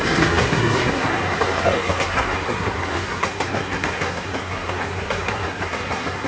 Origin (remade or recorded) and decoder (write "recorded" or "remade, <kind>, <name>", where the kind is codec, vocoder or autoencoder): remade, codec, SNAC